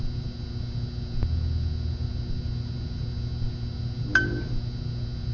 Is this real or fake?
real